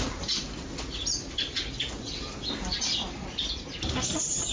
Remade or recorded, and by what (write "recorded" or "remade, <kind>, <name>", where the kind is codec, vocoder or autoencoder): recorded